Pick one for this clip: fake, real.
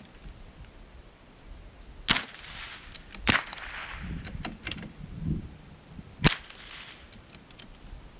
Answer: real